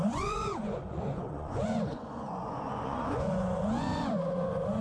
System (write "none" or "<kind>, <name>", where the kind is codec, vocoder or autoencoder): vocoder, Vocos